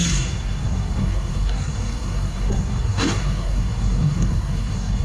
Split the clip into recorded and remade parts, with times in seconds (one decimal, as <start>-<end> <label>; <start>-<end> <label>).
0.0-5.0 remade